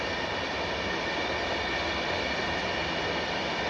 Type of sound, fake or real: real